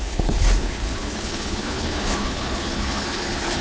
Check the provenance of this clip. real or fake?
fake